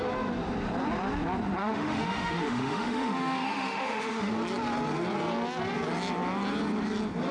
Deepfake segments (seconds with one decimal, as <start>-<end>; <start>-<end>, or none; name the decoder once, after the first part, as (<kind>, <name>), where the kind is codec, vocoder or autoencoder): 1.6-4.3 (autoencoder, DAC-VAE)